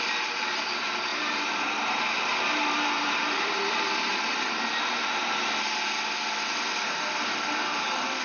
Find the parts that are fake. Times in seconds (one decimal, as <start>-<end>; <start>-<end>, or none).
1.1-4.7

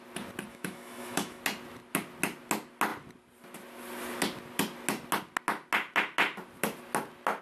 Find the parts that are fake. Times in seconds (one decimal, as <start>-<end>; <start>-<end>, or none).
0.5-1.4

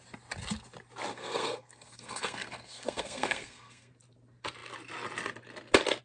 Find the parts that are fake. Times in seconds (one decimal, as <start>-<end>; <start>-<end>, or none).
1.1-3.9

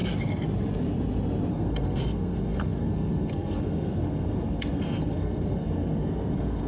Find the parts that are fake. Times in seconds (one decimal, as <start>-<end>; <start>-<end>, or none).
1.5-6.7

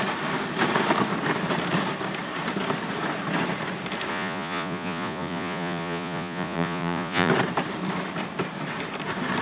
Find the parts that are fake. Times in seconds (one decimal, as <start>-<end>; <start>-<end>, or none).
4.1-7.3

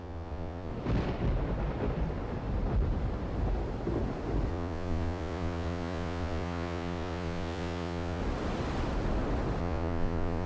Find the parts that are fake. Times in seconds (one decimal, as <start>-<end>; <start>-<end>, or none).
0.0-0.7; 4.5-8.2; 9.6-10.5

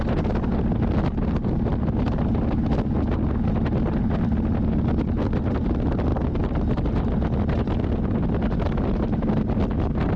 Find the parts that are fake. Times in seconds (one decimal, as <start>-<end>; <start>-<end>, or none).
none